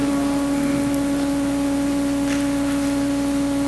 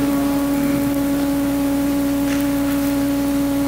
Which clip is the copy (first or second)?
second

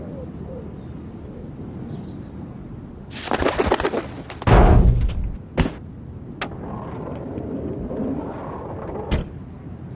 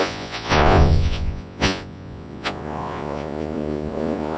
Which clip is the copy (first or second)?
second